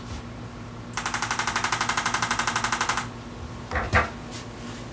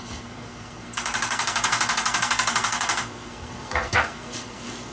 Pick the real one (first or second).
first